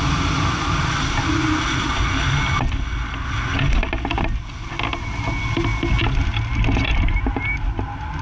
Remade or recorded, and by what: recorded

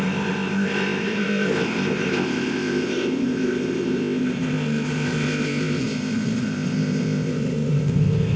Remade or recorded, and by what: remade, codec, ZipCodec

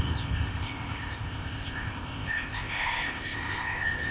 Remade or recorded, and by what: remade, codec, ZipCodec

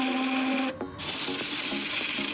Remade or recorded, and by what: recorded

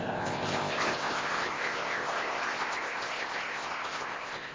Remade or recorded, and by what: remade, codec, ZipCodec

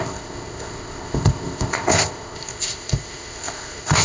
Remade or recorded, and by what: remade, codec, ZipCodec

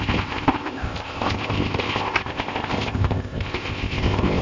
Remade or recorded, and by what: remade, codec, ZipCodec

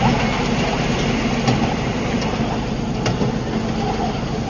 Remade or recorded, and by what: recorded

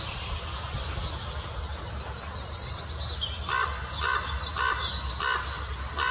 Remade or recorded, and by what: recorded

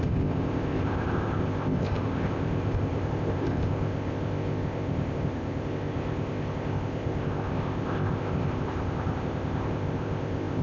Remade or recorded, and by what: remade, codec, ZipCodec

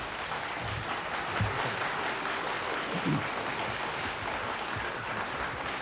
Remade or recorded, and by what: recorded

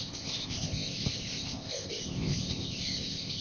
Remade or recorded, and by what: remade, codec, ZipCodec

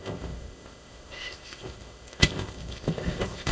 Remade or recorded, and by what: remade, codec, ZipCodec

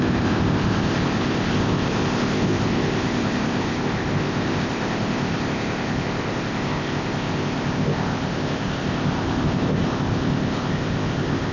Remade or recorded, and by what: remade, codec, ZipCodec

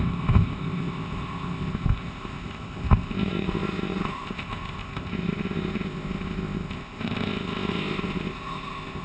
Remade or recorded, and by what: remade, codec, ZipCodec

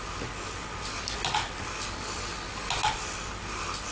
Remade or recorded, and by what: recorded